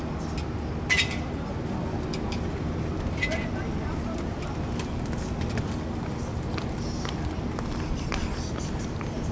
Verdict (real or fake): real